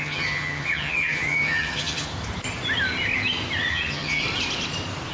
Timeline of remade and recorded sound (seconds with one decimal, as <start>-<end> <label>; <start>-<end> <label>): 0.0-2.1 remade; 2.1-3.7 recorded; 3.7-4.2 remade; 4.2-5.1 recorded